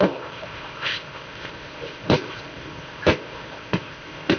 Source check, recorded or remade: remade